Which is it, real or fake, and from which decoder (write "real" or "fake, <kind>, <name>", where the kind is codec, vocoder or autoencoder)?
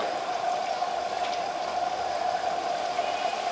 fake, vocoder, BigVGAN v2